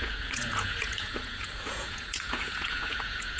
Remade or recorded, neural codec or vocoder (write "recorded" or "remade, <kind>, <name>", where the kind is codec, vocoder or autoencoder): remade, vocoder, Vocos